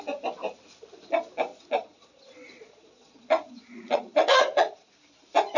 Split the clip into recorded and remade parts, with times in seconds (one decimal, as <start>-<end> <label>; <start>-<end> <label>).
0.0-1.5 recorded; 1.5-4.9 remade; 4.9-5.6 recorded